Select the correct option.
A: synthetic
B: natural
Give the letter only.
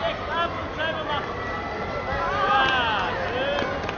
B